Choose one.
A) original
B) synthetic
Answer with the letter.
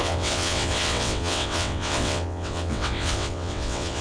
B